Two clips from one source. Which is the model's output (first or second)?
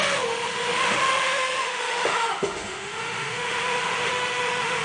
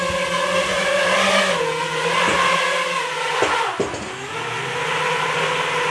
first